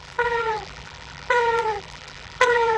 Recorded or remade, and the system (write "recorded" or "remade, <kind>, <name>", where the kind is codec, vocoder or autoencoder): remade, vocoder, BigVGAN v2